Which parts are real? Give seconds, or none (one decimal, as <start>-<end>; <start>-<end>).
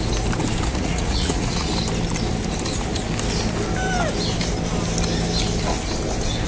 0.0-0.7; 1.7-6.5